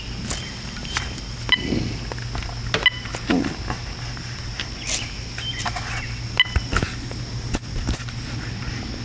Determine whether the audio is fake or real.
real